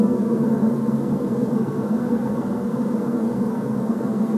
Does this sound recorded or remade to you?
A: remade